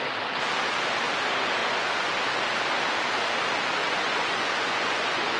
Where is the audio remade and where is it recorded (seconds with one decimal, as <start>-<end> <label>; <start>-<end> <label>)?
0.0-1.6 recorded; 1.6-2.1 remade; 2.1-3.8 recorded; 3.8-5.4 remade